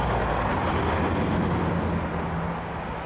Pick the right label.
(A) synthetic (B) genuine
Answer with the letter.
B